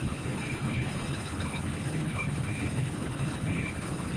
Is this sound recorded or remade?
remade